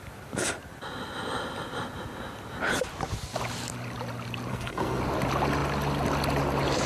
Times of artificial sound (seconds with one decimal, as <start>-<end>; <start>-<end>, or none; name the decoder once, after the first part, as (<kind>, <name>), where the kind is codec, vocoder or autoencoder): 4.5-5.0 (codec, SNAC)